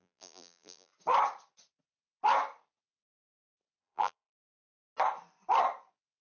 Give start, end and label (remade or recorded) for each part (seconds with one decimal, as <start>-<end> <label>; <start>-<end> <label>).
0.0-0.9 remade; 0.9-3.8 recorded; 3.8-4.4 remade; 4.4-6.2 recorded